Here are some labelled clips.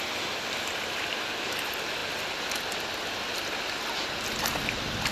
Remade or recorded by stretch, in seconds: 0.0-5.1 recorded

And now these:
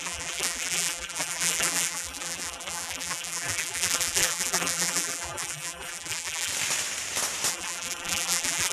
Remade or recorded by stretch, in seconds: 0.0-6.5 remade; 6.5-7.5 recorded; 7.5-8.7 remade